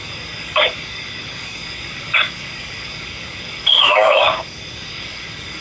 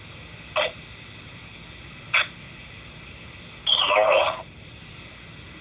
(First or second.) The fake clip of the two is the first